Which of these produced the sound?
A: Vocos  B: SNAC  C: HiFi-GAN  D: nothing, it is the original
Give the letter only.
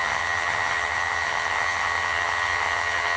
C